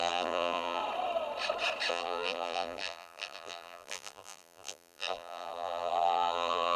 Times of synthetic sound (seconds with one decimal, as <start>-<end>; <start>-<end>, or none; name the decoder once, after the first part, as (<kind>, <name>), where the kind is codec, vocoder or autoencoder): 0.0-0.8 (vocoder, BigVGAN v2); 1.9-6.8